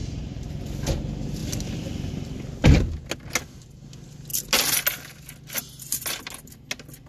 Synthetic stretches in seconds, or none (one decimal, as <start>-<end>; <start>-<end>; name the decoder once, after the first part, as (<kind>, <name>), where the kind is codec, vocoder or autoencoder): 0.0-0.6 (vocoder, BigVGAN v2)